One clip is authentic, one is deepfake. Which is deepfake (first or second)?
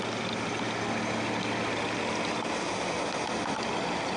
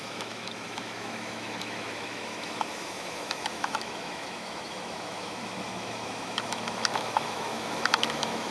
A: second